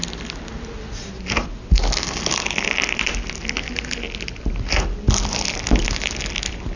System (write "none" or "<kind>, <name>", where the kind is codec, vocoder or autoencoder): none